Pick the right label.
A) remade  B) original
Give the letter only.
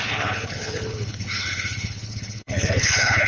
A